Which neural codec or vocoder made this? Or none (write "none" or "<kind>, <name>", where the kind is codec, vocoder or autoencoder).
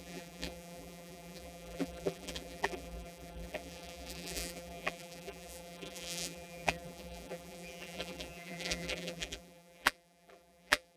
vocoder, BigVGAN v2